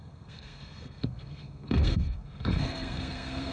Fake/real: fake